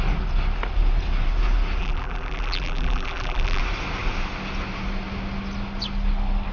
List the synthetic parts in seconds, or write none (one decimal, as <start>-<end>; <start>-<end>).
1.8-3.6